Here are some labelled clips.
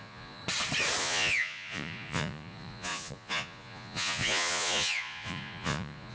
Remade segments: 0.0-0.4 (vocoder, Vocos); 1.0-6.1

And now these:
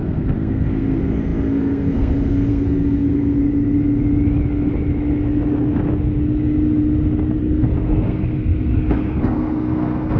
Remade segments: 0.0-3.4 (codec, SNAC); 7.4-10.2

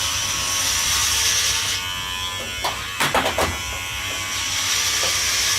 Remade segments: 0.0-1.0 (vocoder, BigVGAN v2); 3.6-5.6

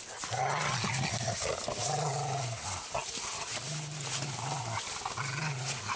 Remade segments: none